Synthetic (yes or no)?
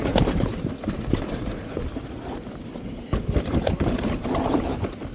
yes